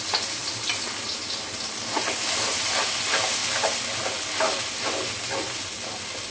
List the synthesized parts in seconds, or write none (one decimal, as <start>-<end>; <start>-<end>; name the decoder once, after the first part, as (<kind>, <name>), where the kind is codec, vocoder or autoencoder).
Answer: none